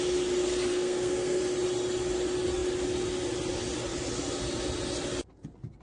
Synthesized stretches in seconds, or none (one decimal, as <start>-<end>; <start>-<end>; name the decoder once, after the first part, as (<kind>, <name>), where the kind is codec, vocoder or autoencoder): 0.7-1.4 (codec, SNAC)